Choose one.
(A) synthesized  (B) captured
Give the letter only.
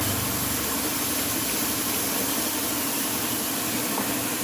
A